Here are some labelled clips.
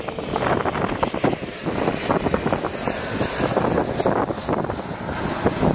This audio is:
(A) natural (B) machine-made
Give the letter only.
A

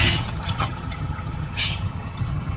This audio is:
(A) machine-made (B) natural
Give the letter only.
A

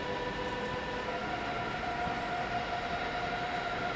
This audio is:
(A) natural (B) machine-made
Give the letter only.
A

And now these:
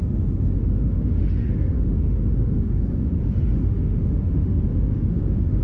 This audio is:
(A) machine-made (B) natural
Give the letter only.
A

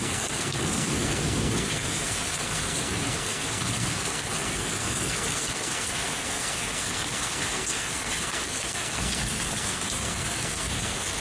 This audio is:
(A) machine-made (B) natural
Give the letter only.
A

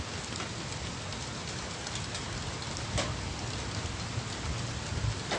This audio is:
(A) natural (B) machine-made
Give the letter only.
A